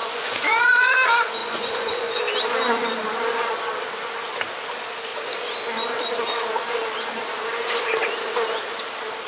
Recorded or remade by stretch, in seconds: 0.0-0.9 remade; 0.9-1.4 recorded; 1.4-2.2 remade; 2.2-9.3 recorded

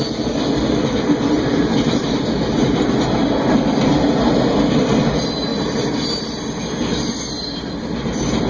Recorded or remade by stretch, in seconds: 0.0-8.5 recorded

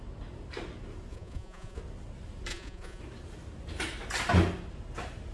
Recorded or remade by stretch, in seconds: 0.0-1.1 recorded; 1.1-1.8 remade; 1.8-2.5 recorded; 2.5-3.0 remade; 3.0-5.3 recorded

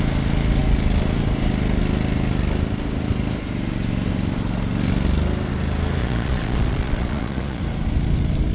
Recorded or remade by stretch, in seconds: 0.0-6.0 recorded; 6.0-7.6 remade; 7.6-8.5 recorded

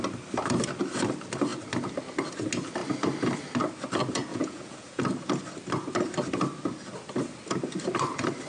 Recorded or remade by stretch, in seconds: 0.0-4.3 recorded; 4.3-5.0 remade; 5.0-8.5 recorded

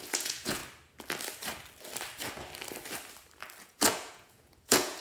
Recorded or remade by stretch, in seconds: 0.0-0.6 remade; 0.6-3.6 recorded; 3.6-5.0 remade

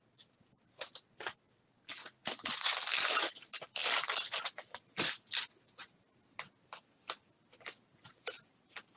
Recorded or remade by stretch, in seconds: 0.0-2.0 recorded; 2.0-2.7 remade; 2.7-9.0 recorded

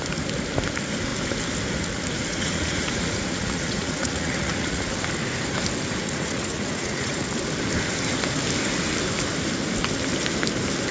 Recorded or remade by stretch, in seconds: 0.0-2.3 recorded; 2.3-5.1 remade; 5.1-6.0 recorded; 6.0-7.3 remade; 7.3-10.9 recorded